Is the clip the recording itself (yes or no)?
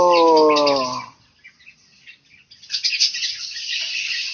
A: yes